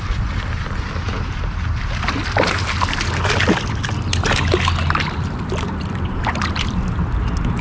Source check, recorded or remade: recorded